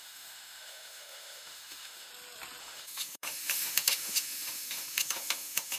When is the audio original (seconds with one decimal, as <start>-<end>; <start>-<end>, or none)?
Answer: 2.1-2.6